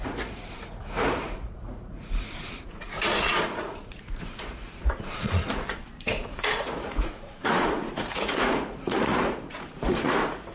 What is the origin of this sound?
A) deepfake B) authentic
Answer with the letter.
A